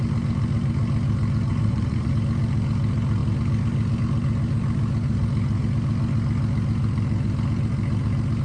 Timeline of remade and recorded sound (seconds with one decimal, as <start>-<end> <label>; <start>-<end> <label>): 0.0-1.5 recorded; 1.5-2.1 remade; 2.1-8.4 recorded

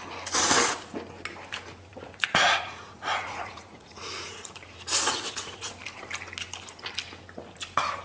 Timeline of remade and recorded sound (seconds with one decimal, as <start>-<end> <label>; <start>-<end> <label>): 0.0-1.9 recorded; 1.9-5.7 remade; 5.7-8.0 recorded

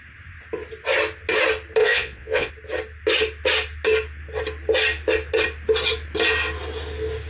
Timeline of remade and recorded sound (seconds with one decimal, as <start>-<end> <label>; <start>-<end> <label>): 0.0-1.8 recorded; 1.8-2.5 remade; 2.5-7.3 recorded

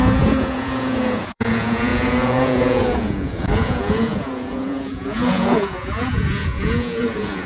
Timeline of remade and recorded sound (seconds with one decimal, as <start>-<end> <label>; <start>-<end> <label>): 0.0-7.5 remade

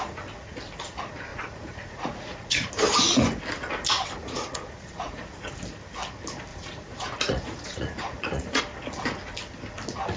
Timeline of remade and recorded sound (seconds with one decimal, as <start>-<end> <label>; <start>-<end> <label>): 0.0-1.3 recorded; 1.3-2.7 remade; 2.7-4.2 recorded; 4.2-5.5 remade; 5.5-6.5 recorded; 6.5-8.6 remade; 8.6-10.2 recorded

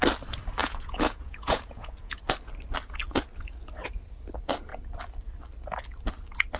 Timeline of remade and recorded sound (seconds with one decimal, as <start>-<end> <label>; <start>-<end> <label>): 0.0-0.6 recorded; 0.6-2.2 remade; 2.2-6.6 recorded

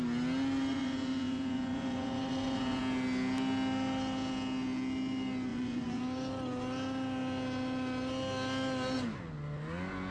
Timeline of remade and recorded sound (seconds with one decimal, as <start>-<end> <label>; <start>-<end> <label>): 0.0-0.7 recorded; 0.7-2.8 remade; 2.8-5.5 recorded; 5.5-6.0 remade; 6.0-10.1 recorded

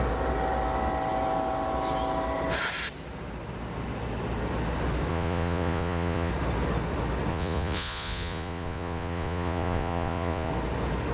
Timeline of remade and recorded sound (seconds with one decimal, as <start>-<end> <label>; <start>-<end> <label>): 0.0-5.1 recorded; 5.1-6.3 remade; 6.3-7.3 recorded; 7.3-10.5 remade; 10.5-11.1 recorded